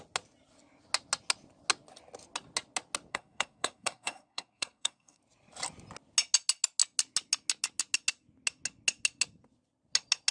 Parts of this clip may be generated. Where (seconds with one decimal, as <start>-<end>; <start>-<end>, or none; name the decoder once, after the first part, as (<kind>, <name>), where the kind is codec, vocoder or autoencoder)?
3.1-5.2 (codec, SNAC)